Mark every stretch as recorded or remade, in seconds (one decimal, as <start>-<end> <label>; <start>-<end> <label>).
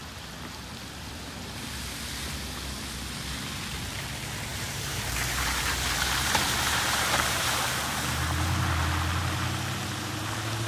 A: 0.0-4.5 recorded; 4.5-7.5 remade; 7.5-10.7 recorded